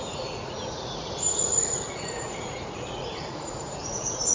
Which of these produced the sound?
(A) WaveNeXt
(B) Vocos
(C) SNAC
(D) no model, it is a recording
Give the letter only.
B